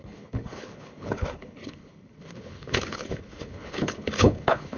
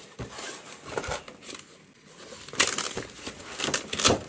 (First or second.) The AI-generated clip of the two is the first